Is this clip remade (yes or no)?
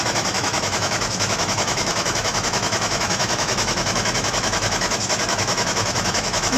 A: yes